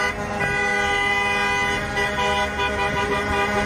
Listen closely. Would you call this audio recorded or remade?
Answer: recorded